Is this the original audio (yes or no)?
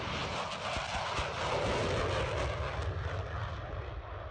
yes